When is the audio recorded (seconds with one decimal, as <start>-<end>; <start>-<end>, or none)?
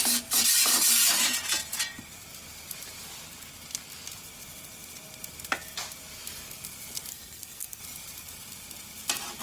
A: 0.0-7.1; 7.8-9.4